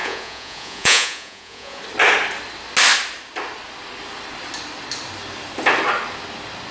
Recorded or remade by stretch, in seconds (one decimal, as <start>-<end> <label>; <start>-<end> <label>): 0.0-1.8 remade; 1.8-6.7 recorded